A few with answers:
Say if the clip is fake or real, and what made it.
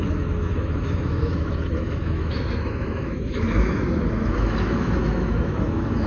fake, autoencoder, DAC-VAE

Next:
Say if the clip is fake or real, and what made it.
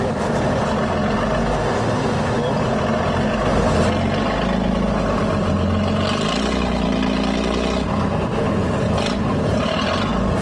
real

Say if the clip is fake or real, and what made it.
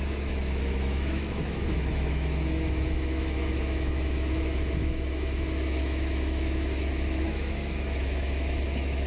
fake, autoencoder, DAC-VAE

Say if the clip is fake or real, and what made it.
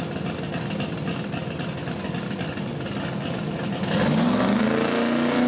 real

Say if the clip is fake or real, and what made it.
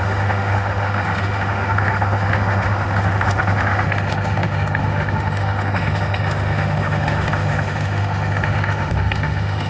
fake, autoencoder, DAC-VAE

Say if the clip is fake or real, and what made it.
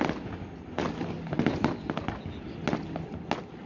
real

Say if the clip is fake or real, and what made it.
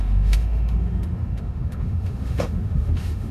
fake, autoencoder, DAC-VAE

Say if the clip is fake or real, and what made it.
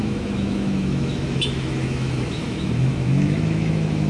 fake, autoencoder, DAC-VAE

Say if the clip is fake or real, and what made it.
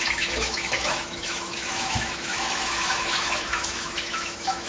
fake, autoencoder, DAC-VAE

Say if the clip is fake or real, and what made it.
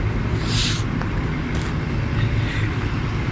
real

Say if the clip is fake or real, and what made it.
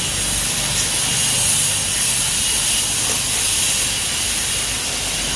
real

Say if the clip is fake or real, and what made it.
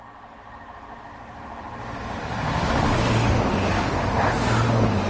real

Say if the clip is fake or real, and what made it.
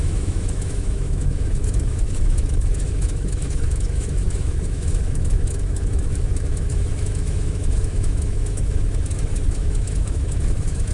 fake, autoencoder, DAC-VAE